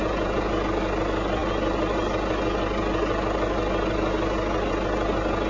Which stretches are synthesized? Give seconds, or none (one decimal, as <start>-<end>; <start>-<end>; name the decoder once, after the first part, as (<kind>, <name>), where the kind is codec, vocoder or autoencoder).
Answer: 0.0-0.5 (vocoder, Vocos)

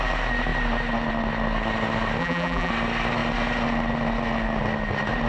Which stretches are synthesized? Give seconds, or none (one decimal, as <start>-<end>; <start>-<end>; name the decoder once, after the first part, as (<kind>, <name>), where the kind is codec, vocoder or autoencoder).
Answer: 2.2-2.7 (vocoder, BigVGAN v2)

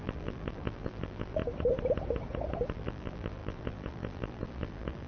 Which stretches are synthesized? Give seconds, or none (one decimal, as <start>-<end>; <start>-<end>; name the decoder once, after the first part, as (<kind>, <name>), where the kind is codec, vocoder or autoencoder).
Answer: 0.0-1.4 (vocoder, BigVGAN v2); 2.7-5.1